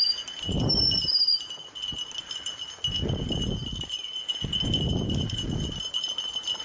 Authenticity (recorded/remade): recorded